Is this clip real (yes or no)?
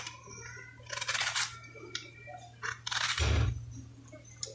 yes